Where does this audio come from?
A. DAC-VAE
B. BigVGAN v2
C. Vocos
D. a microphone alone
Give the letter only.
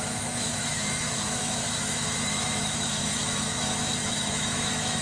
A